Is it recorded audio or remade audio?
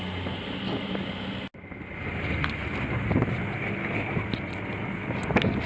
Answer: recorded